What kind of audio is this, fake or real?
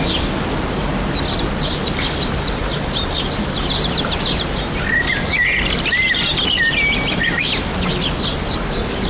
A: real